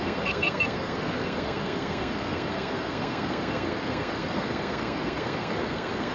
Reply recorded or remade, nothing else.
remade